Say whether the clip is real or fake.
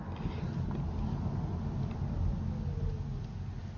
real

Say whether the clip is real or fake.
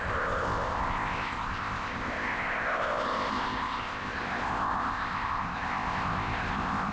fake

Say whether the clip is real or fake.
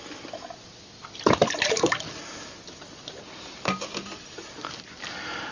real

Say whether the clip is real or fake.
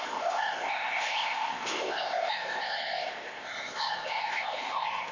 fake